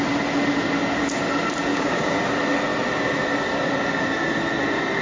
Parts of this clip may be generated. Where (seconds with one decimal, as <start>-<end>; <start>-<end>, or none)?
1.7-2.3